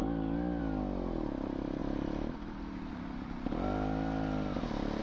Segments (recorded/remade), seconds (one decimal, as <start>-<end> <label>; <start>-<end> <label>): 0.0-5.0 recorded